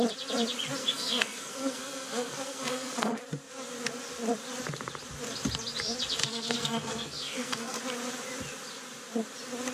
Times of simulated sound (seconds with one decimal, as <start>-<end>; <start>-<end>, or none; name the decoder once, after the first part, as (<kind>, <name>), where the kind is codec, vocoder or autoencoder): 0.8-3.2 (codec, SNAC); 6.2-7.8